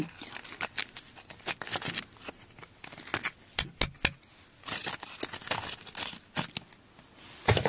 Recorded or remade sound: recorded